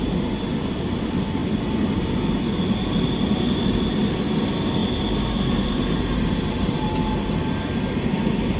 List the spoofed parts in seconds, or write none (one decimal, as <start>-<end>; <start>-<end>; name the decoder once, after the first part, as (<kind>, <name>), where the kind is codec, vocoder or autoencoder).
4.8-6.9 (vocoder, BigVGAN v2)